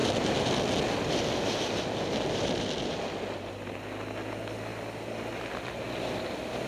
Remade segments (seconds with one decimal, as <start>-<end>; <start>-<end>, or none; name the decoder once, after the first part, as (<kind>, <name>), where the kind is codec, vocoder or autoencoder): none